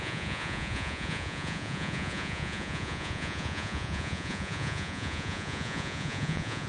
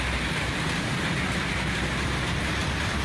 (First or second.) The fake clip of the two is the first